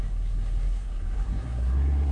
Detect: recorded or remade remade